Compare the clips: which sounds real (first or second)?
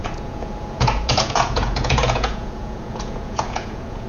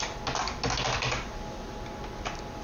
second